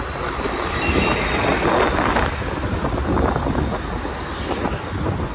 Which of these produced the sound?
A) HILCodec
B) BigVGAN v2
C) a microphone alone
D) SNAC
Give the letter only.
C